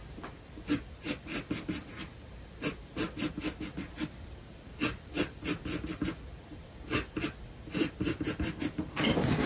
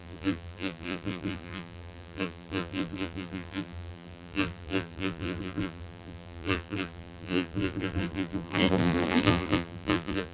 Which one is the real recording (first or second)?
first